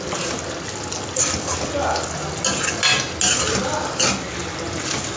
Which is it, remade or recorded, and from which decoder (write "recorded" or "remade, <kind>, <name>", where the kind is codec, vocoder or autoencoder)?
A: recorded